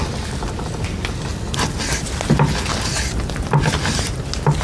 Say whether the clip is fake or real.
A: real